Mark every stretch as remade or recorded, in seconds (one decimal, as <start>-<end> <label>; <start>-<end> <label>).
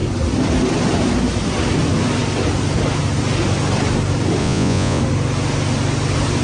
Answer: 0.0-4.4 recorded; 4.4-5.0 remade; 5.0-6.4 recorded